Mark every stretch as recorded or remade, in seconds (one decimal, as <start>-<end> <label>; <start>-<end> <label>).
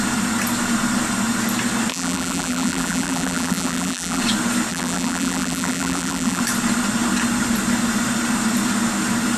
0.0-1.9 recorded; 1.9-4.2 remade; 4.2-4.7 recorded; 4.7-6.4 remade; 6.4-9.4 recorded